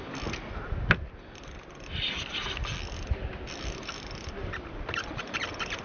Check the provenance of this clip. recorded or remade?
recorded